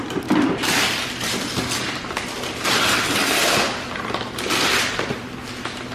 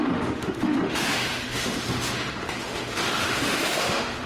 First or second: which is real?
first